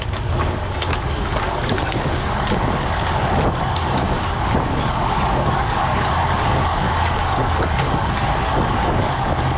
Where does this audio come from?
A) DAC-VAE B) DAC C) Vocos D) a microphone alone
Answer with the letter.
B